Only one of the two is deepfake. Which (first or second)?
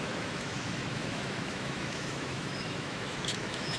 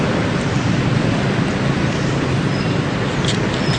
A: first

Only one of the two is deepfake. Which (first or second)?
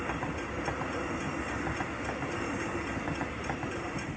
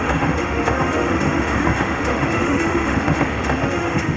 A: second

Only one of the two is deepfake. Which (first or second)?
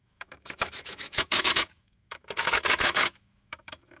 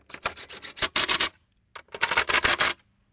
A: first